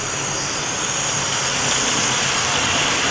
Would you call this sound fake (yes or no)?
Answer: no